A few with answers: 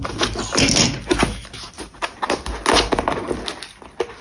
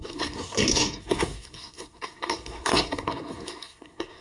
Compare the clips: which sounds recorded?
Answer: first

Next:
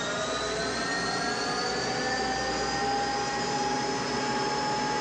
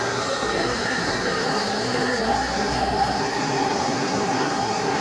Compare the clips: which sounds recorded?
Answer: first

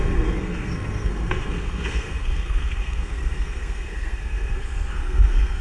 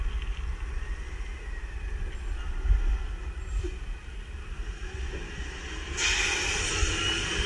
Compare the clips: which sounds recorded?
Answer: second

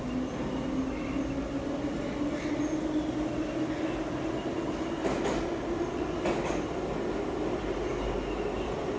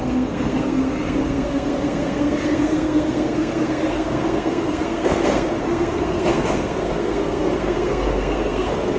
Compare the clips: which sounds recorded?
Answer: first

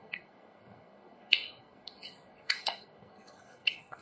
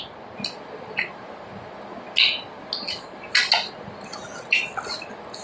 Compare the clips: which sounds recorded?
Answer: second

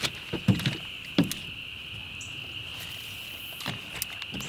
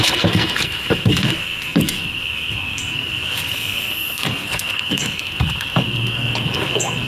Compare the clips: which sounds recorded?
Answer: first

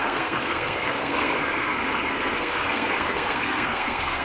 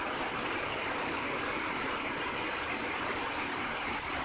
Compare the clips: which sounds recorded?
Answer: second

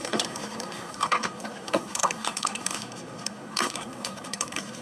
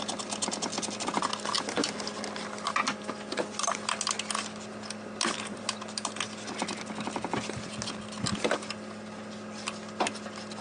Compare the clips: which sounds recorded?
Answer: second